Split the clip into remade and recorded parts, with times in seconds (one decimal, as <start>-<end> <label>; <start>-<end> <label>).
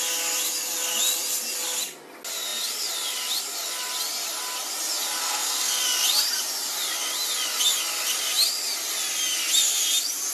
0.0-5.2 recorded; 5.2-5.8 remade; 5.8-10.3 recorded